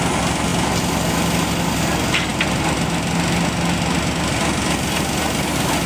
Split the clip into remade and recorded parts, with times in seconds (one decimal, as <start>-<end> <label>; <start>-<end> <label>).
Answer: 0.0-5.9 recorded